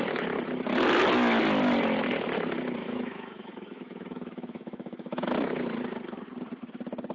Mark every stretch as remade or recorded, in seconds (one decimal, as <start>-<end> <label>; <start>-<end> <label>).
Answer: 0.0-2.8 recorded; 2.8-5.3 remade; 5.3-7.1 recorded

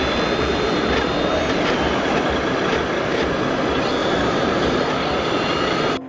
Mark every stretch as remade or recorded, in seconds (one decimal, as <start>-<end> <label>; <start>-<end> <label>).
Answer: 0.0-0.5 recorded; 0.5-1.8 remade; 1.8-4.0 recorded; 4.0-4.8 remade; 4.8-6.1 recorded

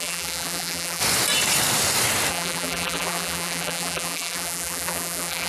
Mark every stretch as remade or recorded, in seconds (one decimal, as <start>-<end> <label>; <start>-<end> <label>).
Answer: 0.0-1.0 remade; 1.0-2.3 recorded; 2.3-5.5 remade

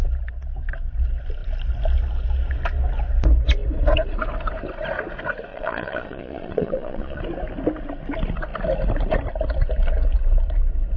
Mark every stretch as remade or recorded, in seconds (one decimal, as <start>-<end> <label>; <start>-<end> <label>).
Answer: 0.0-5.5 recorded; 5.5-7.2 remade; 7.2-11.0 recorded

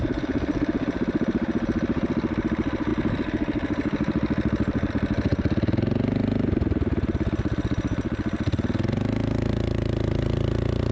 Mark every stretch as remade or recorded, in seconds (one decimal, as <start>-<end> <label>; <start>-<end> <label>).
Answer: 0.0-10.9 recorded

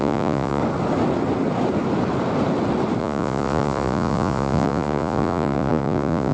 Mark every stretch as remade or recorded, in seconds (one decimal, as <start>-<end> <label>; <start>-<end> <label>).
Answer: 0.0-0.6 remade; 0.6-3.0 recorded; 3.0-6.3 remade